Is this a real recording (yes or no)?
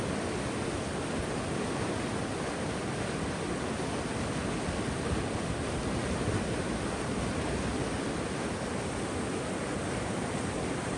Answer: yes